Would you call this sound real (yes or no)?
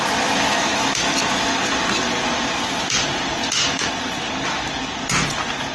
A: yes